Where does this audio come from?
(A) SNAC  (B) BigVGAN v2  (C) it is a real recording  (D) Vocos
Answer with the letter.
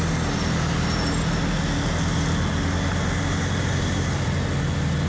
C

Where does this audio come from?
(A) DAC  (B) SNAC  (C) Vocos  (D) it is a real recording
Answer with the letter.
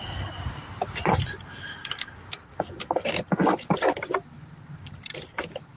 D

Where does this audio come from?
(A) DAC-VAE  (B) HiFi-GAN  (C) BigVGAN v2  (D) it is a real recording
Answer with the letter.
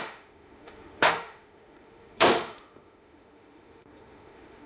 A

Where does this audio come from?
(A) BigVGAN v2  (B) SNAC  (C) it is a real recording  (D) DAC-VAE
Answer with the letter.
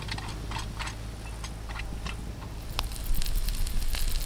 C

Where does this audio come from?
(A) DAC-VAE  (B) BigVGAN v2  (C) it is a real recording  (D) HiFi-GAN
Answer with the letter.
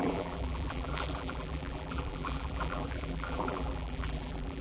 B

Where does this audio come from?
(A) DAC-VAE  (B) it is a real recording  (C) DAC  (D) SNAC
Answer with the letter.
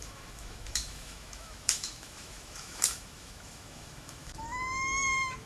A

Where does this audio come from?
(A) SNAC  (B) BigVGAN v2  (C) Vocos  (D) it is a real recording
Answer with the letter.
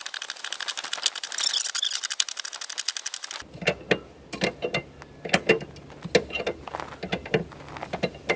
D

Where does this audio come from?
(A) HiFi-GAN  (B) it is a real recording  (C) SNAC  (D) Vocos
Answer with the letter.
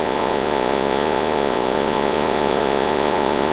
D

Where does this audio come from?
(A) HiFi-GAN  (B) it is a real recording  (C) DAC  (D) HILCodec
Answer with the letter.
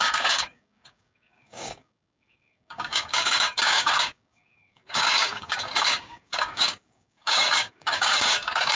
C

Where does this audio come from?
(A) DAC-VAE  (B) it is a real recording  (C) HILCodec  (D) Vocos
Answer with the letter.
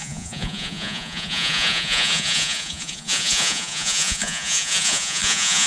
D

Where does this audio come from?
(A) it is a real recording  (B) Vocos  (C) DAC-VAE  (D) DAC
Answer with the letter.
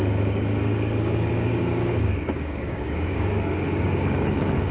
D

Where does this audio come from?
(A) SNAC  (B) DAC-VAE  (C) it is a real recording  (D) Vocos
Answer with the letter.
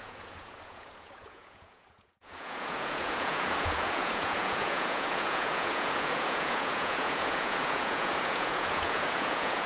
D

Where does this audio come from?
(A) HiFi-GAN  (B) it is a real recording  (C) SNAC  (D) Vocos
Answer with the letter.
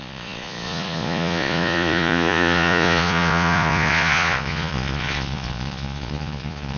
D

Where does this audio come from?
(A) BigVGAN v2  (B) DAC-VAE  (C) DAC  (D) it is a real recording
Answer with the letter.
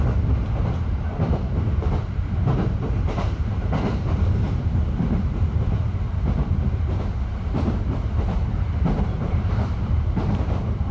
A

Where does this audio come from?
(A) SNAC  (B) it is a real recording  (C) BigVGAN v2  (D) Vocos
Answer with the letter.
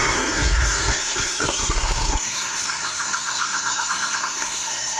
A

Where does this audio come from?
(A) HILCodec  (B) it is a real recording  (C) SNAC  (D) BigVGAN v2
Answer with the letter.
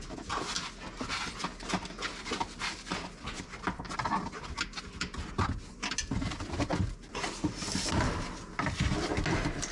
B